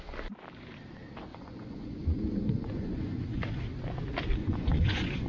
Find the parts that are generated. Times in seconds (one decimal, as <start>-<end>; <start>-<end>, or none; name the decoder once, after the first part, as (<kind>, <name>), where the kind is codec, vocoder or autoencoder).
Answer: 1.3-3.6 (vocoder, Vocos); 4.4-5.3